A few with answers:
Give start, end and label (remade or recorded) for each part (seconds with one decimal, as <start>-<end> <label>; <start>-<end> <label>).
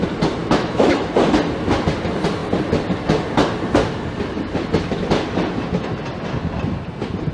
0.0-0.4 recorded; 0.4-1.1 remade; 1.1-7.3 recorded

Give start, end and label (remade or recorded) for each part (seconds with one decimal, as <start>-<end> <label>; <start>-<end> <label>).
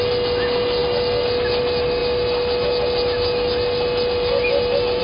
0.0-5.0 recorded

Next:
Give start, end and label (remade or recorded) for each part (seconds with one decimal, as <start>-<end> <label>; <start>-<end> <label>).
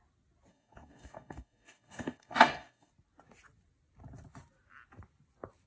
0.0-0.5 recorded; 0.5-2.9 remade; 2.9-5.7 recorded